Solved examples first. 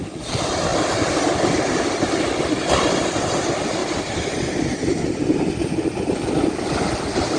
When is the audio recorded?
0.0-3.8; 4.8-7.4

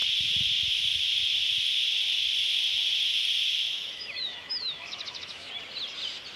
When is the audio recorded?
0.0-3.7; 5.5-6.4

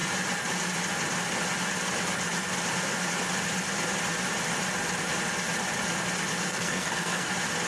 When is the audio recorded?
0.0-6.4; 7.3-7.7

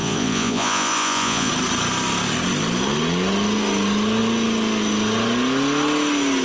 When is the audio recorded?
1.5-6.4

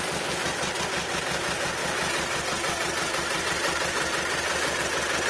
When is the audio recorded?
0.0-1.8; 4.8-5.3

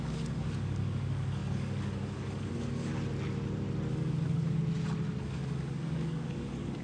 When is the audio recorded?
2.9-3.9; 4.6-5.2